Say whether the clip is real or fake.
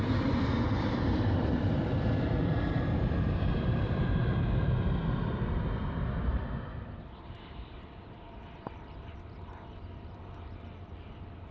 fake